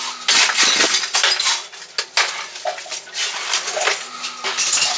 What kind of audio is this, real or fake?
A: real